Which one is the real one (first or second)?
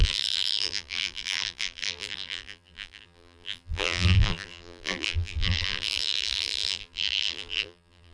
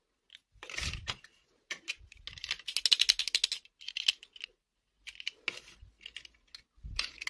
second